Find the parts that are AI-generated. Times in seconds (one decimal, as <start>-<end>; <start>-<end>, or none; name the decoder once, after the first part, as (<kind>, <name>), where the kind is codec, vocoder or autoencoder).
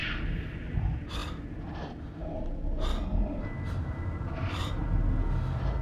none